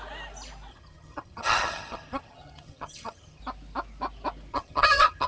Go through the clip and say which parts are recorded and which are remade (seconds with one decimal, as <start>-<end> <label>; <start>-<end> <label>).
0.0-0.7 recorded; 0.7-3.4 remade; 3.4-4.5 recorded; 4.5-5.3 remade